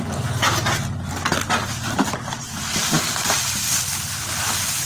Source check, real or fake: fake